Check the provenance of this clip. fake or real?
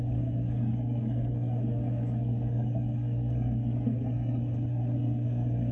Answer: fake